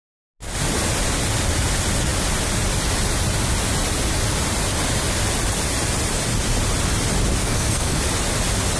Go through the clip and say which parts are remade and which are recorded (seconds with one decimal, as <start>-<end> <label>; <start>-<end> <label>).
0.0-7.4 recorded; 7.4-8.0 remade; 8.0-8.8 recorded